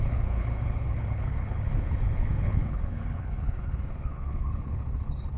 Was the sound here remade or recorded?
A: remade